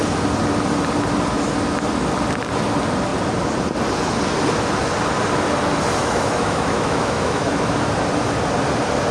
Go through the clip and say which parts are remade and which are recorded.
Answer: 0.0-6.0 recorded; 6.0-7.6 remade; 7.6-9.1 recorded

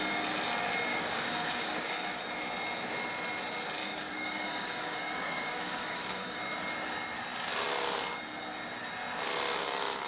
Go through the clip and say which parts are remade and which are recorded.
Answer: 0.0-0.9 recorded; 0.9-2.2 remade; 2.2-3.8 recorded; 3.8-6.4 remade; 6.4-10.1 recorded

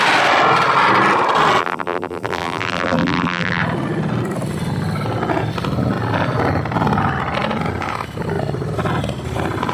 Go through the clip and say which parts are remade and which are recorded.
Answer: 0.0-1.6 recorded; 1.6-3.6 remade; 3.6-9.7 recorded